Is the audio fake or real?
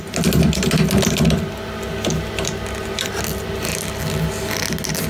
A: real